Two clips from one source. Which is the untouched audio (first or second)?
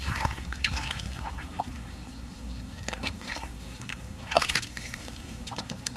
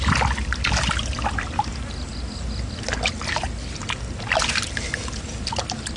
second